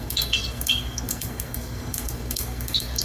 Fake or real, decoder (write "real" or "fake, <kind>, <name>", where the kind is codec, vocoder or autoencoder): fake, codec, SNAC